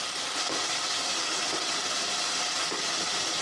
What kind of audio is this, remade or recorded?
recorded